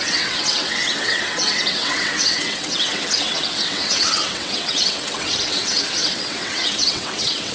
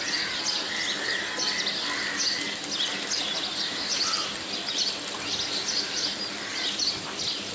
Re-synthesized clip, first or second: first